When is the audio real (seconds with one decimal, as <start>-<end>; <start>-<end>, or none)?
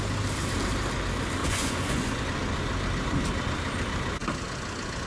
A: 0.0-1.4; 2.2-5.1